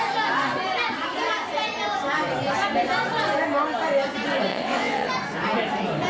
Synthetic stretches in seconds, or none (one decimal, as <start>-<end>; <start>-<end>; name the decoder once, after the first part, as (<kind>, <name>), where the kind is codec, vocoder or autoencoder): 4.5-5.1 (vocoder, WaveNeXt)

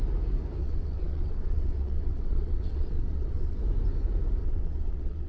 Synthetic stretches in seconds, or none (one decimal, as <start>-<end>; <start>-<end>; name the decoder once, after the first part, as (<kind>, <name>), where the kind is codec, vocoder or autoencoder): 0.6-3.6 (vocoder, WaveNeXt); 4.4-5.3

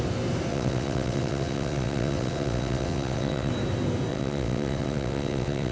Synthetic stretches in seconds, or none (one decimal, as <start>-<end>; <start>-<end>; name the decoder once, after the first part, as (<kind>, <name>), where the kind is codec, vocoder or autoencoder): 0.5-3.5 (vocoder, WaveNeXt); 4.1-5.7

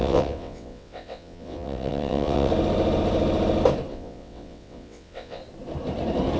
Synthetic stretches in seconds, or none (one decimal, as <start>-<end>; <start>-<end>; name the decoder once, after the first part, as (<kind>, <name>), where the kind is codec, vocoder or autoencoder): 0.0-2.5 (vocoder, WaveNeXt); 3.9-5.4

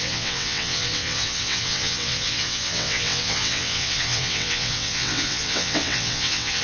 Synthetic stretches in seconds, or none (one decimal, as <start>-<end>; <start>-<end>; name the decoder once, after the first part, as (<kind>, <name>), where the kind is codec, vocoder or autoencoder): 0.0-6.6 (vocoder, WaveNeXt)

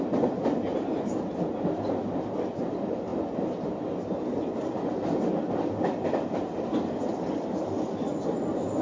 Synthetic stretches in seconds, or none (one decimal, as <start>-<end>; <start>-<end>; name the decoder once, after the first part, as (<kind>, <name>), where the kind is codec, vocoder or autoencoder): none